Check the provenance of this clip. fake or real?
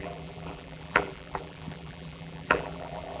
fake